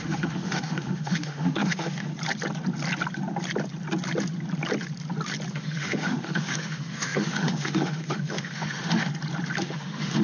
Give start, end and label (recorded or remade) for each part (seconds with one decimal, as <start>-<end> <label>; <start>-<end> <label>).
0.0-2.1 remade; 2.1-5.5 recorded; 5.5-9.1 remade; 9.1-9.6 recorded; 9.6-10.2 remade